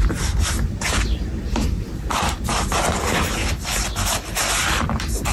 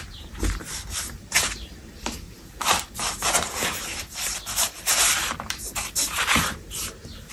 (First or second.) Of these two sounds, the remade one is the second